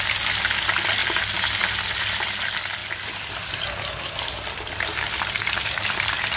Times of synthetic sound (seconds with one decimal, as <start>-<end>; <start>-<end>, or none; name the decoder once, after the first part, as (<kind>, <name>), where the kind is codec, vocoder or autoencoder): none